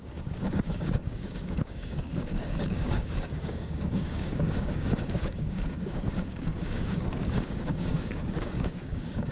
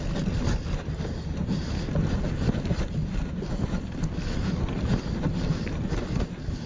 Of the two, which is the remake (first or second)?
first